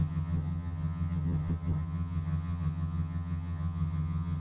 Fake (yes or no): yes